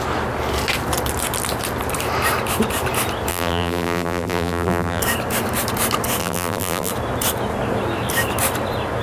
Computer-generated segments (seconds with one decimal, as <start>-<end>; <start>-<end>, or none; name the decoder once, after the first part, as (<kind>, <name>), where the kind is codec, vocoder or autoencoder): 3.3-5.0 (vocoder, BigVGAN v2); 6.2-6.9